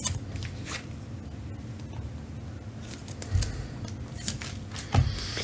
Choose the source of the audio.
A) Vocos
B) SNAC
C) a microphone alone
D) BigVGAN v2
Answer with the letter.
C